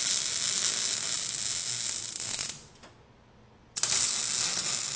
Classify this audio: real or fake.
real